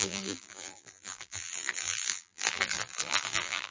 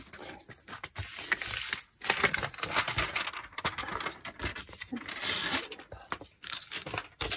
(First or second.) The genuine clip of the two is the second